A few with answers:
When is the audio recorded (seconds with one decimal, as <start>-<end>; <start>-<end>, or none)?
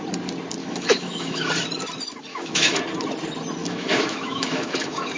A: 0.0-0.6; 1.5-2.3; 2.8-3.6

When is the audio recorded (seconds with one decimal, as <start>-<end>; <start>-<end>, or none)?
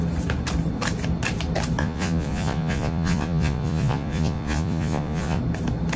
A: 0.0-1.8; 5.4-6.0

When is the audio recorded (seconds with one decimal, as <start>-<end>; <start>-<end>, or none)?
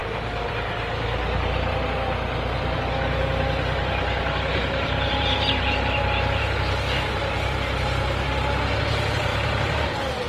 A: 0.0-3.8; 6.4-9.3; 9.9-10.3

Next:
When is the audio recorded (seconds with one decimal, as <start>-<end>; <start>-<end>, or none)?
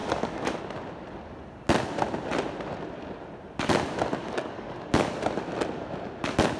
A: 0.6-4.2; 5.1-6.6